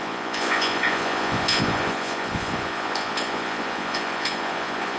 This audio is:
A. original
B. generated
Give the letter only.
B